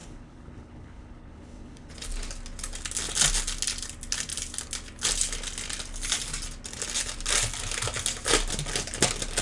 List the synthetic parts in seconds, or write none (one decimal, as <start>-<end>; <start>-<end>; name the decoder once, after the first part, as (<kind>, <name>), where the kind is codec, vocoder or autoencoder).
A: 0.0-1.9 (codec, HILCodec)